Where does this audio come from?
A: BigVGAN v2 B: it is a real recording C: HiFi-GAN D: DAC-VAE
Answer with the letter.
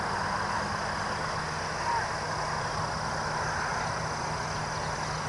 B